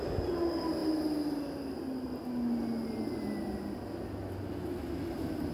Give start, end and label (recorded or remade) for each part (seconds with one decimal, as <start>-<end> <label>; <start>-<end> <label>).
0.0-5.5 recorded

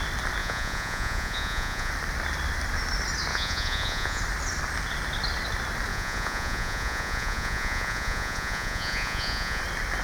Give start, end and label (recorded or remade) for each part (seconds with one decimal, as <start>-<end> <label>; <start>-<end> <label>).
0.0-0.4 recorded; 0.4-1.9 remade; 1.9-3.3 recorded; 3.3-4.2 remade; 4.2-5.9 recorded; 5.9-9.6 remade; 9.6-10.0 recorded